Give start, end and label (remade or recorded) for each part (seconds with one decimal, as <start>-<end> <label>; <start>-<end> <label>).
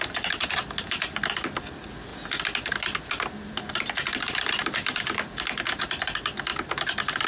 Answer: 0.0-7.3 recorded